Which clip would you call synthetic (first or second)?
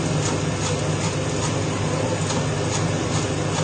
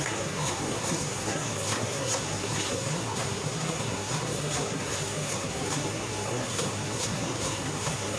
second